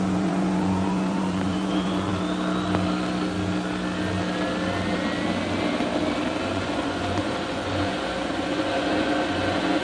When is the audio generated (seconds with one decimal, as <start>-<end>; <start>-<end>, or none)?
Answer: 0.0-2.1; 6.4-9.8